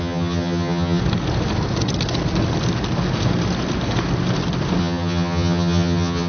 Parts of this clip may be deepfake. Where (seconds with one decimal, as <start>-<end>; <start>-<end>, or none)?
0.0-1.0; 4.8-6.3